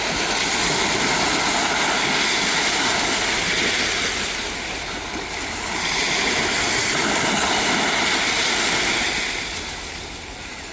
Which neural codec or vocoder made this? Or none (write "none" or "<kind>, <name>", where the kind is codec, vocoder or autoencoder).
none